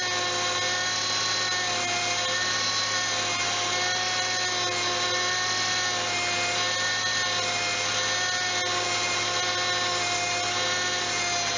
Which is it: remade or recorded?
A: recorded